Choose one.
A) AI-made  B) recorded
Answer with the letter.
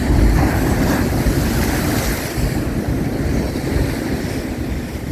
B